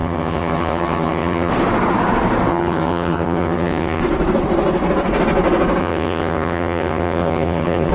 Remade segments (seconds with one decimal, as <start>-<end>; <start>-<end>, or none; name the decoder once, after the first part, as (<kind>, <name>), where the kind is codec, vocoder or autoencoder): 0.0-1.5 (vocoder, HiFi-GAN); 2.5-4.0; 5.8-7.9